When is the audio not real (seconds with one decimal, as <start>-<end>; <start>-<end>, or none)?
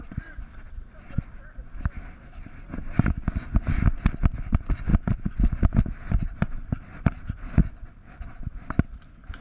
none